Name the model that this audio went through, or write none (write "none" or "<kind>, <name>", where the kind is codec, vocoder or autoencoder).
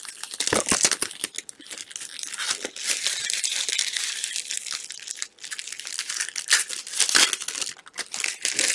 none